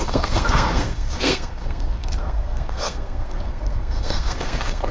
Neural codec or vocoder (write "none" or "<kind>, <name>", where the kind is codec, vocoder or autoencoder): codec, SNAC